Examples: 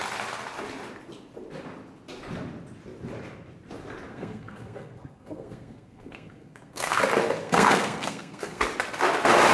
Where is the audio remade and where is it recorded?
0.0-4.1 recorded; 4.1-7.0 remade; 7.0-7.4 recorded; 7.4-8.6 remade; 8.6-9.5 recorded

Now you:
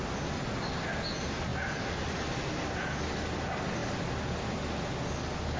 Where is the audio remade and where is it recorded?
0.0-5.6 recorded

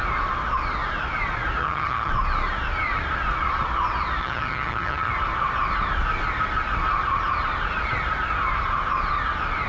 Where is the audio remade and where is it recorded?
0.0-1.6 recorded; 1.6-2.1 remade; 2.1-4.2 recorded; 4.2-5.1 remade; 5.1-9.7 recorded

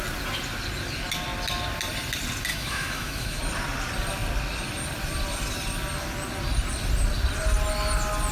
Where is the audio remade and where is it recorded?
0.0-2.5 recorded; 2.5-3.4 remade; 3.4-8.3 recorded

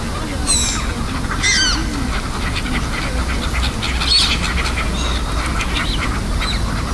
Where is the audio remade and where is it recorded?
0.0-6.9 recorded

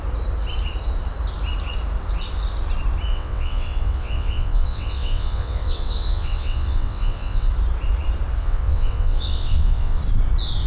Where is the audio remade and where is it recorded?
0.0-3.1 recorded; 3.1-7.5 remade; 7.5-8.4 recorded; 8.4-10.0 remade; 10.0-10.7 recorded

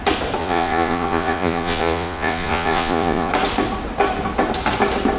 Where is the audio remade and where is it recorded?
0.0-0.4 recorded; 0.4-3.3 remade; 3.3-5.2 recorded